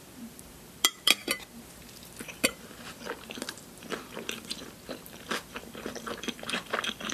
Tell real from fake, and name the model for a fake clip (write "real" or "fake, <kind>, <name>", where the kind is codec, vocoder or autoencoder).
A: fake, vocoder, BigVGAN v2